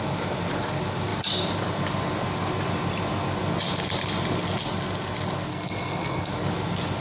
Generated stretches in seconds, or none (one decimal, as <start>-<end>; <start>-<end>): 5.5-6.3